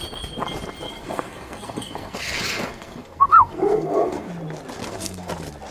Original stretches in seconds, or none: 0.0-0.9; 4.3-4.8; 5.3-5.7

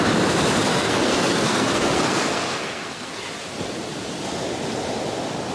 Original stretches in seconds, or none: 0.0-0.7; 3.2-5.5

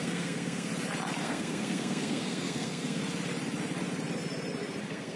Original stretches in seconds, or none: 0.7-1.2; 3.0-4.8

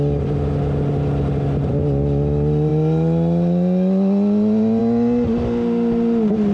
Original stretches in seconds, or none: 0.0-6.5

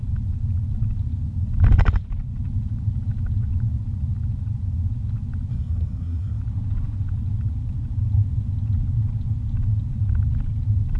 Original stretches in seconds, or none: 0.0-5.5; 6.4-11.0